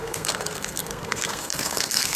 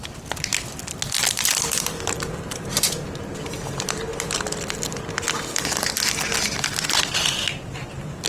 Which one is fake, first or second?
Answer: first